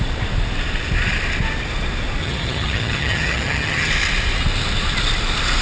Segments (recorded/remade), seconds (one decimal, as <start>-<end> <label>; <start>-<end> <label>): 0.0-2.2 recorded; 2.2-3.9 remade; 3.9-5.6 recorded